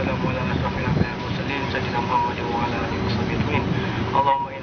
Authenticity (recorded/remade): recorded